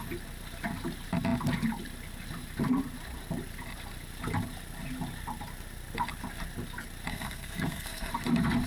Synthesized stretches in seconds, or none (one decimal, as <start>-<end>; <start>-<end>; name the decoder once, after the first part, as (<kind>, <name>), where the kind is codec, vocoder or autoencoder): 7.1-8.1 (codec, SNAC)

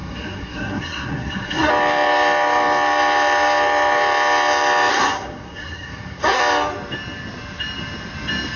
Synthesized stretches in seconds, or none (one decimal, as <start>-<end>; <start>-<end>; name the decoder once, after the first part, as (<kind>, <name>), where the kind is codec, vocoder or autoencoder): 0.0-1.7 (codec, SNAC); 4.9-6.4

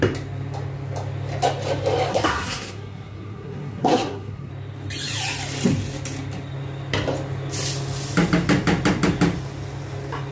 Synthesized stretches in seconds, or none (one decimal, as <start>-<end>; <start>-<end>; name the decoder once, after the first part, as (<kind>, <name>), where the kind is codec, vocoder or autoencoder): 2.1-4.5 (codec, SNAC)

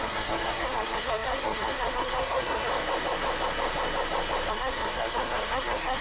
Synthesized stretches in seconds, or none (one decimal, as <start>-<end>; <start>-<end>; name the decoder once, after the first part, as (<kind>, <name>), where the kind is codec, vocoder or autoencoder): 0.0-2.7 (codec, SNAC); 4.5-6.0